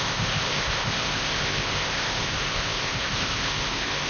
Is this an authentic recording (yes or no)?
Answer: no